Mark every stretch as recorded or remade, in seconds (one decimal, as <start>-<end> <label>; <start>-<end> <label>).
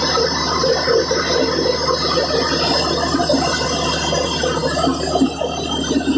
0.0-6.2 recorded